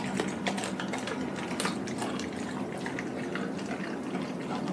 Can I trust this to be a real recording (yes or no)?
yes